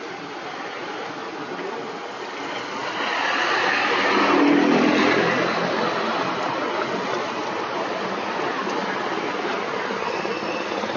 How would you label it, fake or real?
real